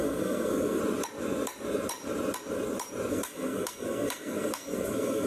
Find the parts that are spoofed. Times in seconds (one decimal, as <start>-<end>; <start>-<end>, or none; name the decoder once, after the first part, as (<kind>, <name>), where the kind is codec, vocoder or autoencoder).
0.0-0.8 (codec, SNAC); 3.1-5.3